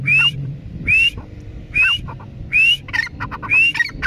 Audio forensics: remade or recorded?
remade